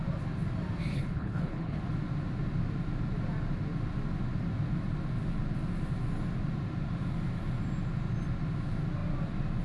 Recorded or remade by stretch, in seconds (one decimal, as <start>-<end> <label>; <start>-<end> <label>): 0.0-0.9 recorded; 0.9-1.8 remade; 1.8-9.6 recorded